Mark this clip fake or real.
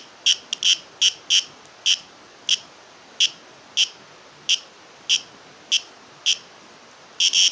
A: real